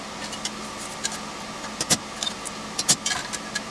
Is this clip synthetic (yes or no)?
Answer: no